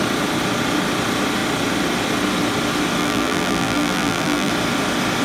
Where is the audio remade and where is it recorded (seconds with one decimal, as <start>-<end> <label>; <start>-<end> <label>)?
0.0-3.0 recorded; 3.0-4.5 remade; 4.5-5.2 recorded